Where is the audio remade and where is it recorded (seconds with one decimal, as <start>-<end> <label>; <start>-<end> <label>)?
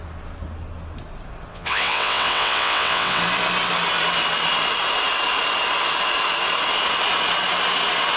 0.0-1.5 recorded; 1.5-3.2 remade; 3.2-8.2 recorded